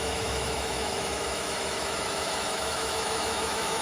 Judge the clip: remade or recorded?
remade